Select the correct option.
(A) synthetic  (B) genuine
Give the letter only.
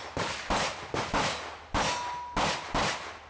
B